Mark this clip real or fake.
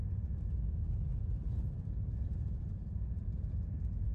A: real